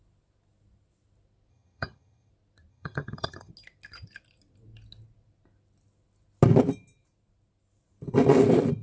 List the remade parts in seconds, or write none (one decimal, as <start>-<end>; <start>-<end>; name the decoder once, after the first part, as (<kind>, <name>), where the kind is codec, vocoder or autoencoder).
1.5-2.3 (vocoder, HiFi-GAN); 2.7-3.5